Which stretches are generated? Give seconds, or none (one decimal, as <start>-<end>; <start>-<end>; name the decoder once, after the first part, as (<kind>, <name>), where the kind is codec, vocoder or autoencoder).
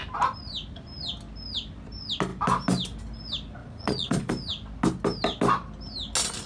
3.6-4.3 (vocoder, Vocos)